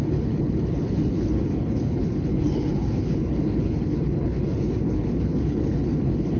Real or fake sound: fake